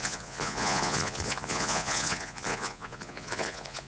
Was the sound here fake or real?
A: fake